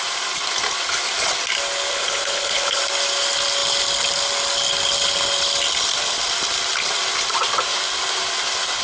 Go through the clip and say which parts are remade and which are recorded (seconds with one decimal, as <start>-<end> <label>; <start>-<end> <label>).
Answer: 0.0-1.9 recorded; 1.9-2.8 remade; 2.8-8.8 recorded